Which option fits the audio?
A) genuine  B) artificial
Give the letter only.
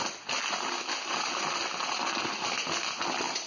A